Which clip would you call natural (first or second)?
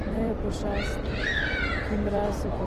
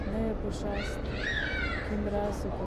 second